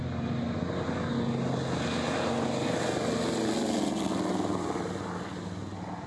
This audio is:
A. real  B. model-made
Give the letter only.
A